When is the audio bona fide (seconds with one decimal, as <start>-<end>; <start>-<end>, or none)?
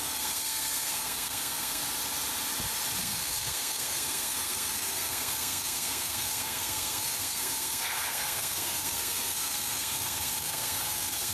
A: 1.8-3.0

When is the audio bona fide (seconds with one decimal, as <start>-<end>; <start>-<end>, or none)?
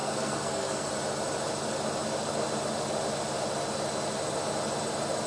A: 0.9-5.3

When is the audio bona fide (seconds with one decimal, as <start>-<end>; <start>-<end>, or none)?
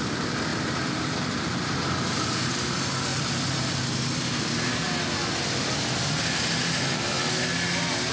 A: 0.0-8.1